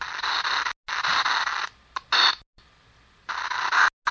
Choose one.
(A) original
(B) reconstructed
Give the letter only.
A